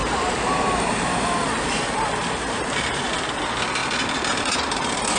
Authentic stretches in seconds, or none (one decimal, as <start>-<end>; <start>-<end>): 3.1-3.8